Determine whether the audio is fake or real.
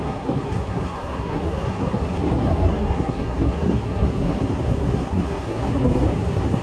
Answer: fake